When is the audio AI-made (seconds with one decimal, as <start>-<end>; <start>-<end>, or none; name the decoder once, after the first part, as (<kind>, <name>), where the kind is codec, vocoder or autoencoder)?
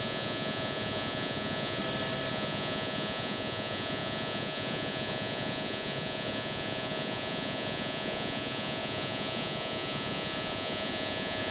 0.0-1.8 (vocoder, Vocos); 2.3-11.5